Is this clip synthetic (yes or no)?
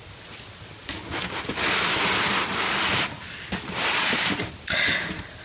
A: no